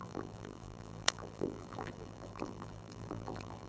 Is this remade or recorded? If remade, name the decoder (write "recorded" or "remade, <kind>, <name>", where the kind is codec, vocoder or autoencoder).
remade, vocoder, BigVGAN v2